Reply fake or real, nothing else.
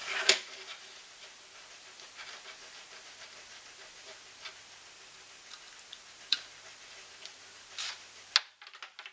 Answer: real